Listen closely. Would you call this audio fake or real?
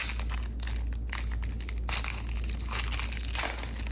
real